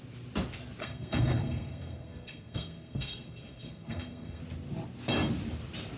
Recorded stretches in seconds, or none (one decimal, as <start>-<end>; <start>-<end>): 0.0-0.8; 4.4-6.0